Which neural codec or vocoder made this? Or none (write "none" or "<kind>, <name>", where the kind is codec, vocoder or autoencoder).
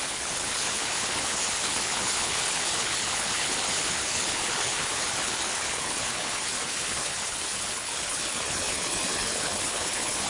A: codec, HILCodec